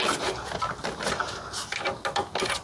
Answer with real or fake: real